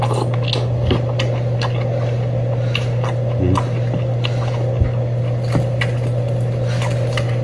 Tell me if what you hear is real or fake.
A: real